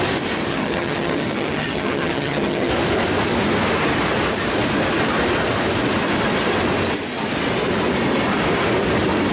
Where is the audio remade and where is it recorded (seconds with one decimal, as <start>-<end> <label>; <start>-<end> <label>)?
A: 0.0-0.5 recorded; 0.5-2.7 remade; 2.7-9.3 recorded